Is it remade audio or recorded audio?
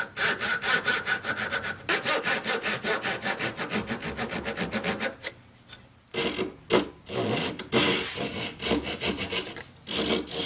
recorded